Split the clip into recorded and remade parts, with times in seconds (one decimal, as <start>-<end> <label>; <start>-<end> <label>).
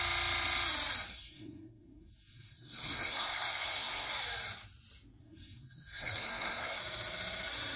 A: 0.0-1.1 recorded; 1.1-4.1 remade; 4.1-5.2 recorded; 5.2-6.8 remade; 6.8-7.8 recorded